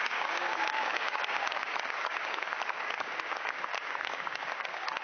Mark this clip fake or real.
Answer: fake